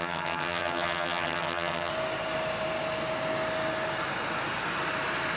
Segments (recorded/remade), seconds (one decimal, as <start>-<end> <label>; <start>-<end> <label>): 0.0-1.9 remade; 1.9-5.4 recorded